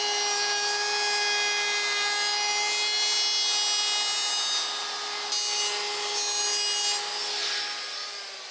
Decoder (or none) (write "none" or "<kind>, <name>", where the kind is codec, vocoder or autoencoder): none